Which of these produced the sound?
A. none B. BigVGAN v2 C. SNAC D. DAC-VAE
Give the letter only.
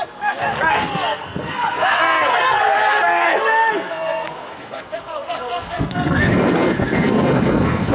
C